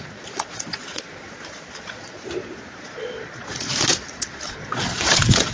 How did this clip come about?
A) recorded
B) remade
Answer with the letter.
B